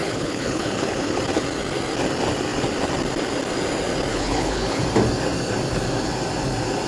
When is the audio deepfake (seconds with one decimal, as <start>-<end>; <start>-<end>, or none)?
0.0-1.2; 4.1-4.8